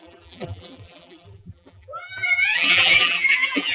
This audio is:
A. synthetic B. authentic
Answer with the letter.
A